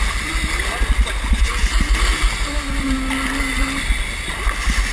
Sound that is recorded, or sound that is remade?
recorded